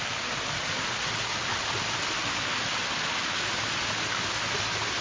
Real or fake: real